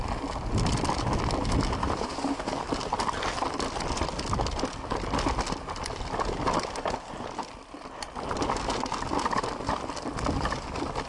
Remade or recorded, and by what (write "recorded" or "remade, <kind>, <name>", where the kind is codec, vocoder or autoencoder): recorded